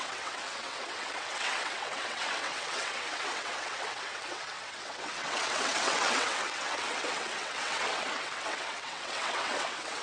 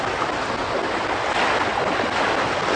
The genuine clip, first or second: second